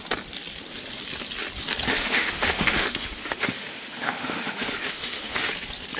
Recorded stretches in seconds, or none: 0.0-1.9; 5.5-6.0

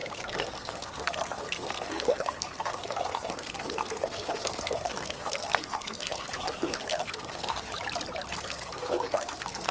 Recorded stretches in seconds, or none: 7.7-8.3

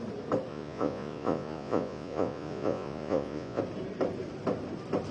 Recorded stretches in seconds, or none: 0.0-0.5; 3.6-5.1

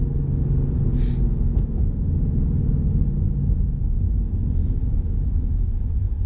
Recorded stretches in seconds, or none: 0.0-4.8; 5.8-6.3

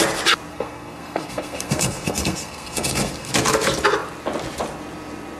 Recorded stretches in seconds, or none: 0.0-0.5; 3.3-5.4

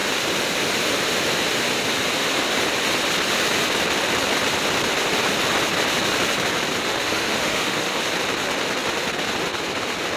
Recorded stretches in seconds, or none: 0.0-6.8; 8.0-10.2

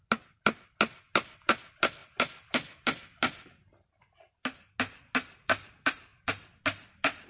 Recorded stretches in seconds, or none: 0.0-7.3